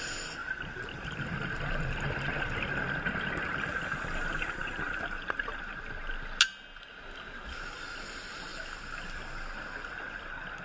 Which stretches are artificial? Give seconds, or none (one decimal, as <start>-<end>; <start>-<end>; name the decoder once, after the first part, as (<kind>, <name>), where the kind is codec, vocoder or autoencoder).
0.4-1.2 (vocoder, BigVGAN v2); 4.6-5.6